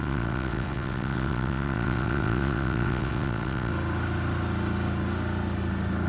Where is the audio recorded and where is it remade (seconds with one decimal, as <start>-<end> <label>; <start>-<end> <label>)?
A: 0.0-3.7 remade; 3.7-6.1 recorded